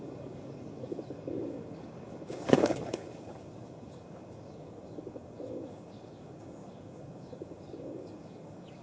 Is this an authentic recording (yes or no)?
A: no